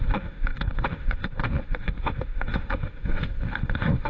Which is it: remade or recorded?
remade